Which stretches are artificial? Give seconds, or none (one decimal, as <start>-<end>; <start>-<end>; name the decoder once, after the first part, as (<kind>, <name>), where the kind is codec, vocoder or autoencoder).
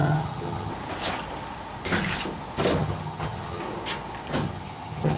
0.0-0.7 (vocoder, HiFi-GAN); 2.8-3.6; 4.4-5.2